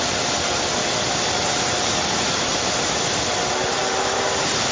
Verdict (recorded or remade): recorded